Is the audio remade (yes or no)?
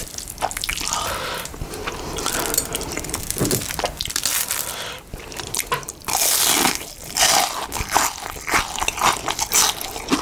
no